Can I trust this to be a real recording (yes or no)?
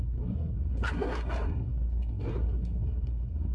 no